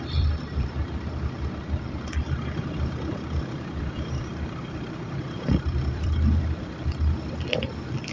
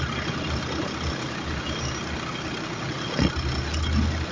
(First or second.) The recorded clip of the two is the second